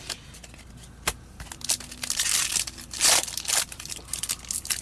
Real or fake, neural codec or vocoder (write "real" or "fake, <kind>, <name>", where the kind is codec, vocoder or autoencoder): real